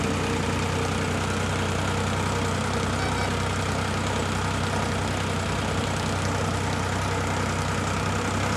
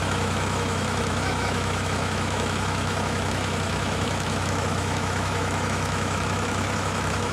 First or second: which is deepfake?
second